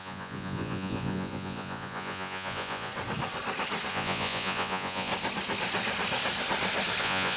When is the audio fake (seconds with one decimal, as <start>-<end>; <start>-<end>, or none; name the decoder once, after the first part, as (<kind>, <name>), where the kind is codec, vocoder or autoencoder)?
0.0-2.9 (vocoder, Vocos); 3.9-5.1; 7.0-7.4